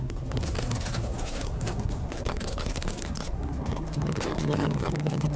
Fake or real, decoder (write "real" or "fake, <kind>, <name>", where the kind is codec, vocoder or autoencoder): fake, codec, SNAC